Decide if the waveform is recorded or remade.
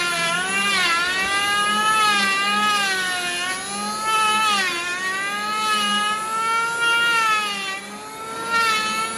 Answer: recorded